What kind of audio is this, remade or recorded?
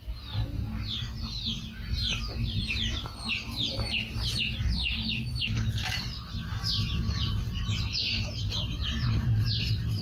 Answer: recorded